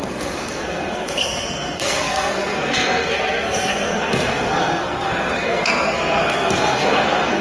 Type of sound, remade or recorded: remade